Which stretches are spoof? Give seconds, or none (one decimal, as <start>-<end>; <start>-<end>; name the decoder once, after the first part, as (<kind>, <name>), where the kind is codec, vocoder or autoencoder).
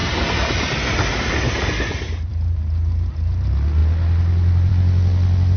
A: none